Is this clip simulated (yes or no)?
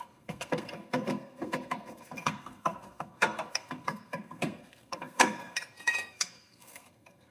yes